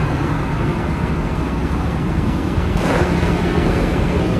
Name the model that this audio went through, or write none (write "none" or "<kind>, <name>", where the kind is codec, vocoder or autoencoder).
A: codec, SNAC